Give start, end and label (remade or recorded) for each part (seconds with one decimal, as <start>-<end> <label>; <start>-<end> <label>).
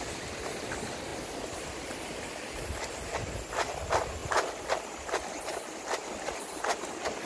0.0-4.2 recorded; 4.2-6.5 remade; 6.5-7.3 recorded